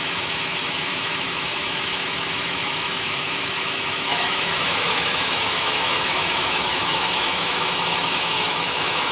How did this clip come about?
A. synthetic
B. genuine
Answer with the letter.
A